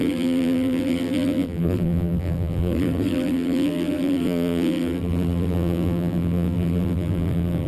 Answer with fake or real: fake